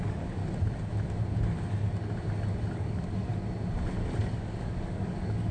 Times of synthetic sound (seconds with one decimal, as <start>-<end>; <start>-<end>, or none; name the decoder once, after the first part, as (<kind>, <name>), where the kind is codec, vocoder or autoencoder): 0.0-0.4 (codec, DAC); 2.7-3.3; 4.2-5.5